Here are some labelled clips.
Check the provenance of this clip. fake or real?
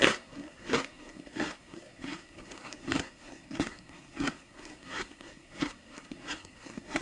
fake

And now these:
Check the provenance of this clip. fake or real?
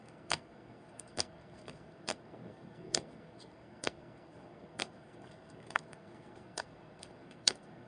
fake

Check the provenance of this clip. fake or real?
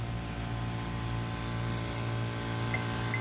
real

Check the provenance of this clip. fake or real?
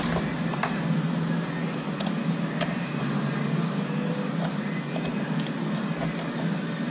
real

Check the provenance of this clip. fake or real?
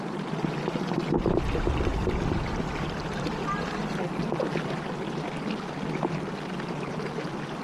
real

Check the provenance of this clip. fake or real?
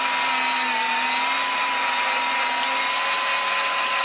real